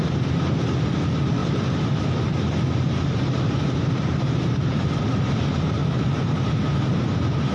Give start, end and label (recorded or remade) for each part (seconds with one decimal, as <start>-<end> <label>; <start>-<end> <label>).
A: 0.0-1.4 recorded; 1.4-5.3 remade; 5.3-5.8 recorded; 5.8-7.5 remade